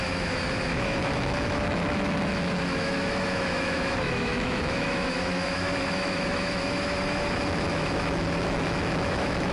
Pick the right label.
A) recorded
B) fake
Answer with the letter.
B